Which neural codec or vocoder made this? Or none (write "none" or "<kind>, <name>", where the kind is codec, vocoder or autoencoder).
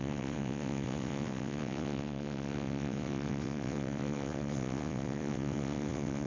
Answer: vocoder, WaveNeXt